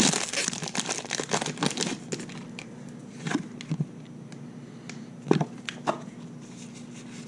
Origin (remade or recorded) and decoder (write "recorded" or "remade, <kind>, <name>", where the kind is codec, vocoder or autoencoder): recorded